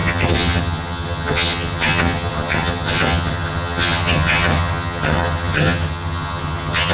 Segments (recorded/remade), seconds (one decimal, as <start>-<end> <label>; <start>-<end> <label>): 0.0-6.9 remade